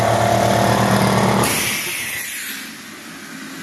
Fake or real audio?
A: real